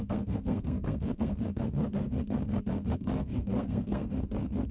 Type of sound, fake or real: fake